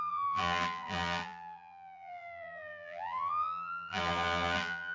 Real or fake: fake